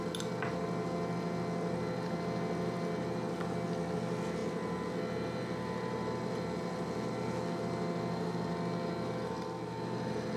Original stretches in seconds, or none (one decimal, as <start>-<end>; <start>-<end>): 0.0-10.4